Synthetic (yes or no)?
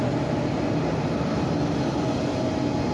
no